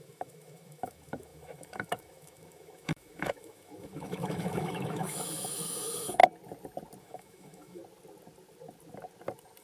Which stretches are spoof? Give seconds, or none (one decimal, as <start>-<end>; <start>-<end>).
0.0-6.2; 7.0-7.8